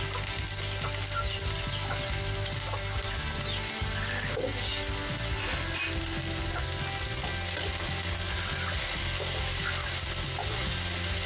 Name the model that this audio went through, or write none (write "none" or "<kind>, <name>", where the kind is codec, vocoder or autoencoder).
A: none